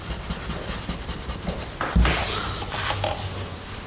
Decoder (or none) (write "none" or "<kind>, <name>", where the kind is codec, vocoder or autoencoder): none